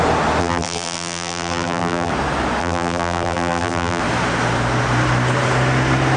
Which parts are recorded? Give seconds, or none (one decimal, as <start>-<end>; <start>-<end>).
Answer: 0.0-0.4; 2.1-2.6; 4.0-6.2